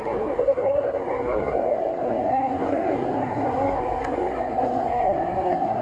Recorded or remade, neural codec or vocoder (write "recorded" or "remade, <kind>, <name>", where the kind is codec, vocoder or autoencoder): remade, codec, SNAC